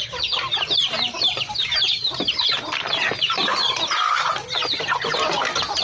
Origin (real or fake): real